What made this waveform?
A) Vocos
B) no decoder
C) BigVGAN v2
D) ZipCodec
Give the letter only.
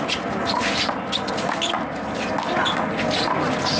B